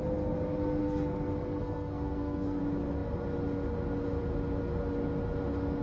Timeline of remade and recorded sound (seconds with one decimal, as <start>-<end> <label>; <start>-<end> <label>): 0.0-0.8 recorded; 0.8-2.6 remade; 2.6-5.8 recorded